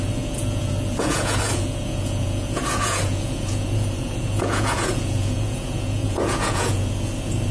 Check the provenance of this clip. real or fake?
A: fake